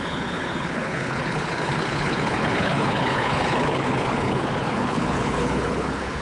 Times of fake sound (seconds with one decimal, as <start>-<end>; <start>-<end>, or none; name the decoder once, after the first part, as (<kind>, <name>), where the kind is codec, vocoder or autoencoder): 0.0-6.2 (codec, HILCodec)